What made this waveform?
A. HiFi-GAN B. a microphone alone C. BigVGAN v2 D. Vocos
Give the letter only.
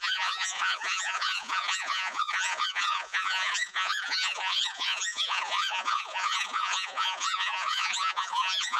D